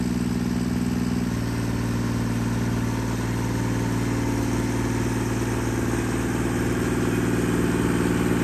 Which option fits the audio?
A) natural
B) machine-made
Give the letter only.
A